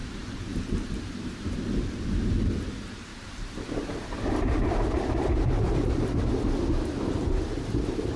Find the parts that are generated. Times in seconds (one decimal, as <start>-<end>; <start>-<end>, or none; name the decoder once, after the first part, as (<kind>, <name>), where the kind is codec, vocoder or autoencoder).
0.0-2.6 (vocoder, BigVGAN v2); 3.1-6.2